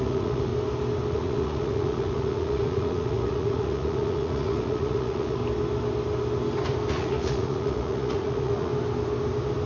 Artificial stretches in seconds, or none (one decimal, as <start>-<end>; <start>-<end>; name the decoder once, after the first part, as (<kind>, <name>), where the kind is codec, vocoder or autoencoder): 0.0-0.5 (vocoder, Vocos); 1.1-5.4; 6.9-8.7